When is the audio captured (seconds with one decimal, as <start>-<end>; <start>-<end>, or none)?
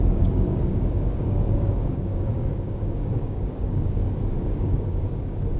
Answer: none